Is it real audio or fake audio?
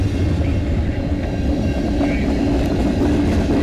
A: real